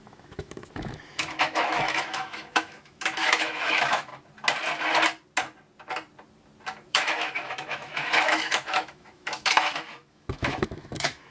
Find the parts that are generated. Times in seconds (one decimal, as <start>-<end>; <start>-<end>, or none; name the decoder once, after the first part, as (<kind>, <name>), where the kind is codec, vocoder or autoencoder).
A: 0.0-4.1 (autoencoder, DAC-VAE); 6.9-11.3